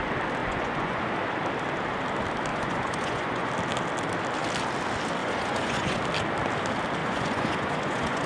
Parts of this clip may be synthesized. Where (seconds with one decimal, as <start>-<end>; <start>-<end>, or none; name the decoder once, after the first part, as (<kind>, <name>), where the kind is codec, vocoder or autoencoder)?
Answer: 0.4-1.0 (vocoder, Vocos); 2.5-3.5; 5.2-6.0; 7.0-8.3